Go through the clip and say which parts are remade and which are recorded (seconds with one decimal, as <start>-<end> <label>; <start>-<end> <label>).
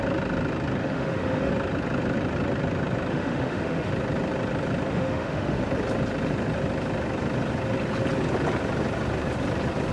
0.0-0.8 recorded; 0.8-1.5 remade; 1.5-3.1 recorded; 3.1-3.9 remade; 3.9-4.9 recorded; 4.9-5.6 remade; 5.6-9.9 recorded